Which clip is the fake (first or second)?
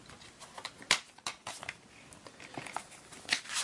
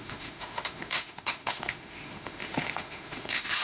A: second